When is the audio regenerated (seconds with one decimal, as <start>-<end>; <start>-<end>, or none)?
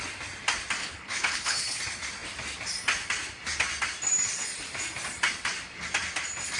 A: 0.8-1.8